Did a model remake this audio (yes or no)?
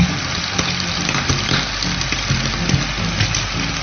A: no